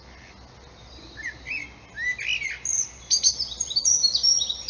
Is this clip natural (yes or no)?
yes